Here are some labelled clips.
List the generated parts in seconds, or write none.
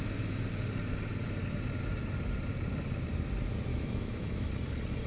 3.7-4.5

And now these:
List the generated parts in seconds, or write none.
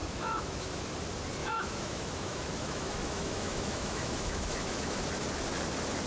0.0-0.8; 1.4-5.1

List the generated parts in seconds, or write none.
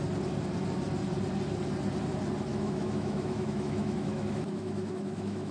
2.5-5.5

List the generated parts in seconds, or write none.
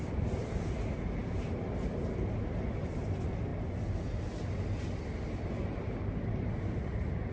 none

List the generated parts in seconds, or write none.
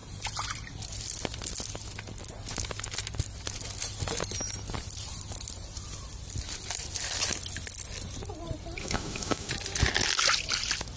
8.8-9.5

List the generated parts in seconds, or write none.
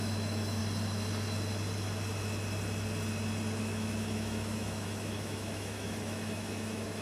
0.0-0.6; 3.6-7.0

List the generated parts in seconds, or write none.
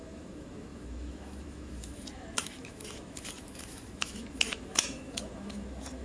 0.0-6.0